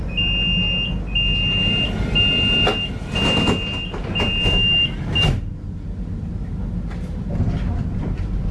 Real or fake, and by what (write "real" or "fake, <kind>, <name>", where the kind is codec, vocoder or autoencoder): real